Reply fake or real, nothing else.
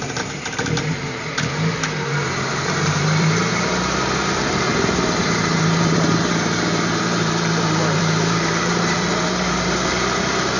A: fake